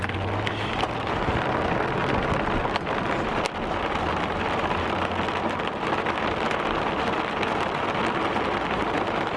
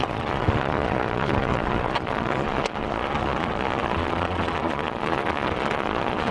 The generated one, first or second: second